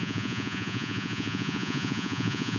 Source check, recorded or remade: remade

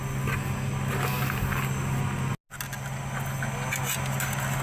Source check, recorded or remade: recorded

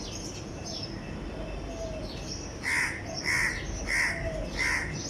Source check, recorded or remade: recorded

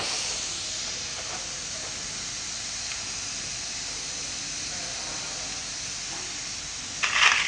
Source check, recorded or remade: recorded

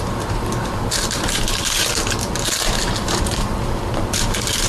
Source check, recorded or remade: remade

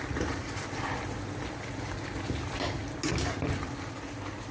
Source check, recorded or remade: recorded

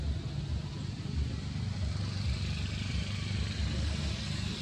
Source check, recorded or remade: recorded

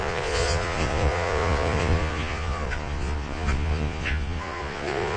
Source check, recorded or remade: remade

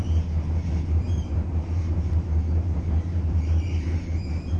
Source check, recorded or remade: remade